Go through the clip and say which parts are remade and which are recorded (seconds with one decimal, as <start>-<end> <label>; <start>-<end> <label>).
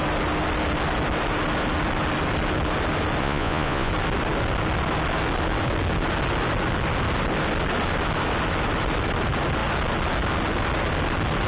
0.0-3.2 recorded; 3.2-3.9 remade; 3.9-11.5 recorded